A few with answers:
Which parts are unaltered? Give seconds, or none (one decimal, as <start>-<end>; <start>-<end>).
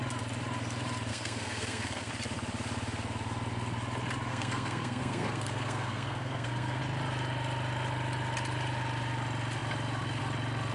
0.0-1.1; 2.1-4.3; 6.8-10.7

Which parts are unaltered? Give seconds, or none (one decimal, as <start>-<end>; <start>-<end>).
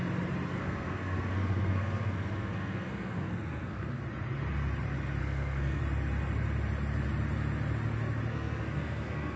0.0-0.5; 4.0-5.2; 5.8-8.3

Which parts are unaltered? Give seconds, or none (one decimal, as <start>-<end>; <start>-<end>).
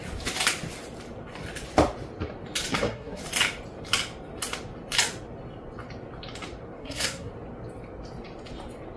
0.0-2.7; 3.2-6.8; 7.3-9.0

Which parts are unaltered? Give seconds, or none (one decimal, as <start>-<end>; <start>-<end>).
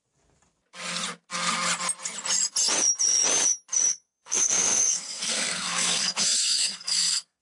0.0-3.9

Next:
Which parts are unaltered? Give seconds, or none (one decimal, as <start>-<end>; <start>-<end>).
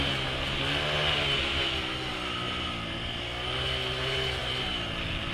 0.0-5.3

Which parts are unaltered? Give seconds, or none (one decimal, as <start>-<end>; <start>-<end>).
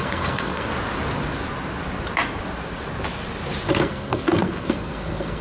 0.7-3.7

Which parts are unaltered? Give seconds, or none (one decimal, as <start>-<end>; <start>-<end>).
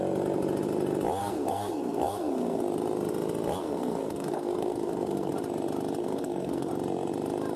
0.0-1.2; 2.6-3.6; 5.3-6.0; 6.7-7.6